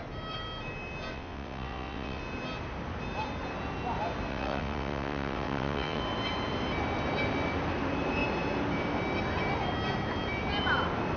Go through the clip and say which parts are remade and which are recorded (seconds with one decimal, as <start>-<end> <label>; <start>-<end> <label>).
0.0-1.1 recorded; 1.1-2.2 remade; 2.2-4.3 recorded; 4.3-6.0 remade; 6.0-11.2 recorded